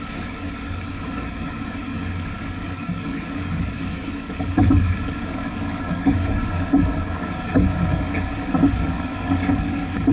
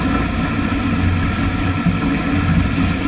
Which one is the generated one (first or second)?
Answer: first